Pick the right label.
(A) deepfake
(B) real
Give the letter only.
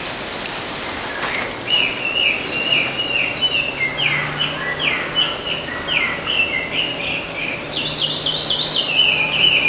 B